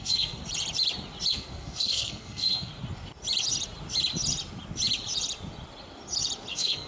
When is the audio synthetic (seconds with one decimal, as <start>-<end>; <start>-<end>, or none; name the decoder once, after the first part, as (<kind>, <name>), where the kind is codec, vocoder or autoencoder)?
0.0-0.4 (codec, SNAC); 1.3-2.7; 6.5-6.9